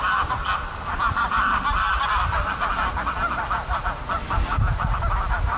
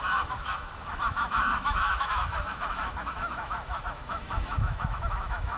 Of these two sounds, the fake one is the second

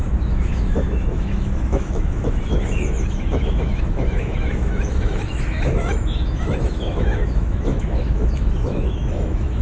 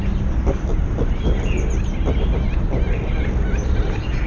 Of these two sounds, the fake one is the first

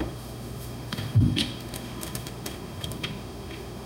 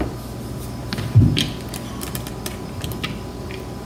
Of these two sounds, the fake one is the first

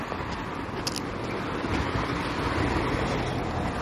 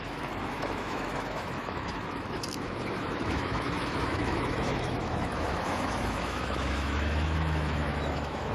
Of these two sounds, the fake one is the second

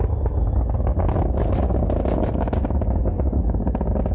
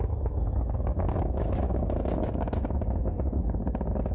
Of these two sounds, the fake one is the second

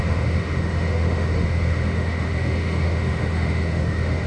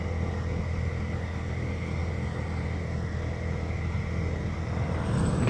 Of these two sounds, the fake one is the first